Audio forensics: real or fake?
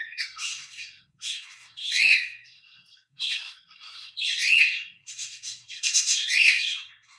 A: fake